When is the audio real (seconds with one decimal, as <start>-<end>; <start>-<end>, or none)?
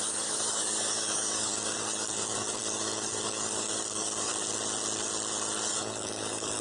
4.3-5.7